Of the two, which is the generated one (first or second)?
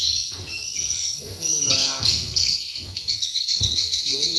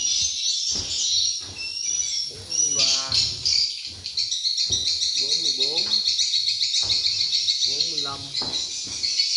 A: first